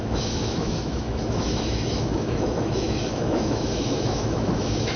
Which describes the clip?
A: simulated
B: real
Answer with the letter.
A